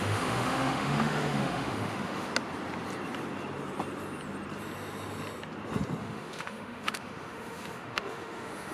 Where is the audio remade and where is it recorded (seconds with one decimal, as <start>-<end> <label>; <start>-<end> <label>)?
0.0-2.3 remade; 2.3-6.0 recorded; 6.0-8.7 remade